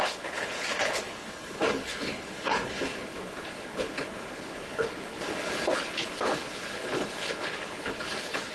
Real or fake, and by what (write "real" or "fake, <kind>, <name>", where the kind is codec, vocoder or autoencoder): fake, codec, HILCodec